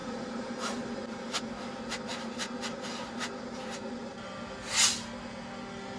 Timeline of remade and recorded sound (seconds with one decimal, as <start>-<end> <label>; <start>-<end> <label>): 0.0-1.5 remade; 1.5-2.1 recorded; 2.1-4.3 remade; 4.3-6.0 recorded